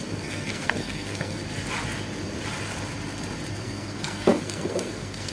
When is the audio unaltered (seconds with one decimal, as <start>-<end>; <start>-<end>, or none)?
1.4-3.5